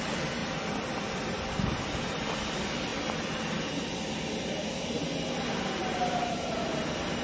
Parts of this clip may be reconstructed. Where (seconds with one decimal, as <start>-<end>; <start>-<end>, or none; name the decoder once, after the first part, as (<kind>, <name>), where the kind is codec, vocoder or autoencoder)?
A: none